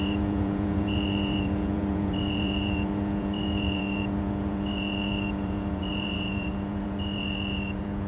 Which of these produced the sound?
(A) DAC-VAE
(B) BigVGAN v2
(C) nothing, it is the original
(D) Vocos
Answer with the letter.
D